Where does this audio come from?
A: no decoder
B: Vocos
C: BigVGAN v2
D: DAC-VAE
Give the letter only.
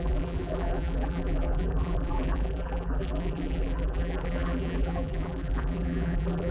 C